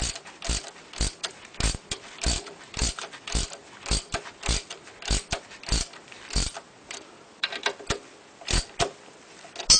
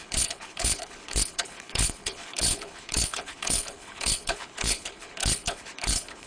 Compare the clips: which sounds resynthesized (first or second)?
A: second